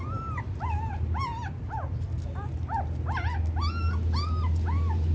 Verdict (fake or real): real